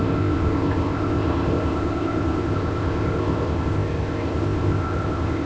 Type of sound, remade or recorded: remade